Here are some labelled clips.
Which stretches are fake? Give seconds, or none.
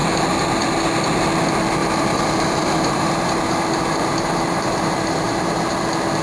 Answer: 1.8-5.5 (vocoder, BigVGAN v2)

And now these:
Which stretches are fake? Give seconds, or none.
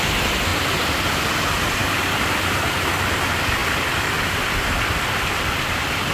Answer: 1.8-2.9 (vocoder, BigVGAN v2)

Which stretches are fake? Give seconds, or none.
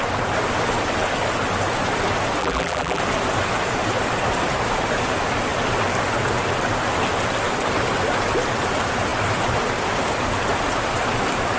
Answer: 2.4-3.0 (vocoder, BigVGAN v2)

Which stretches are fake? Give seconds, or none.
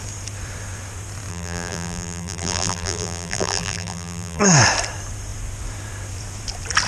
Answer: 1.3-4.4 (vocoder, BigVGAN v2)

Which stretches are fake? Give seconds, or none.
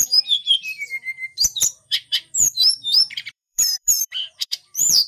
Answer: 0.0-5.1 (vocoder, BigVGAN v2)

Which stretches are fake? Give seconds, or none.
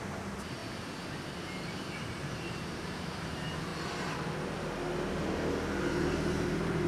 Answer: 0.0-0.6 (vocoder, BigVGAN v2); 1.3-3.7; 5.8-6.9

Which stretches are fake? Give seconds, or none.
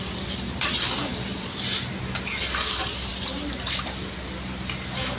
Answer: none